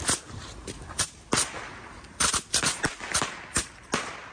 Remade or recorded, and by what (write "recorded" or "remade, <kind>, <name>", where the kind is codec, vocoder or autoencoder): recorded